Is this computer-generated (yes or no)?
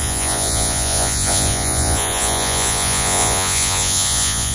yes